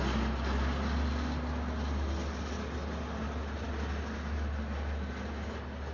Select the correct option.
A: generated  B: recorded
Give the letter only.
B